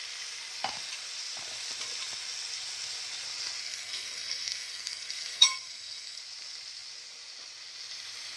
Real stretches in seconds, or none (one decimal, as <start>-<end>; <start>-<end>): 0.0-3.6; 6.2-8.4